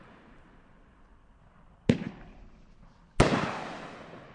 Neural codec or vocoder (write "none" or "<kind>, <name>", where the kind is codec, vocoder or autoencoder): none